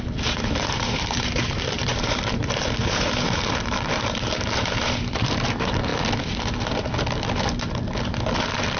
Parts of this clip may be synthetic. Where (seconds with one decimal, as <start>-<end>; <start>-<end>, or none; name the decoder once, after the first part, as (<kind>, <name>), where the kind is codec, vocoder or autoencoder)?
0.0-5.9 (vocoder, BigVGAN v2); 8.4-8.8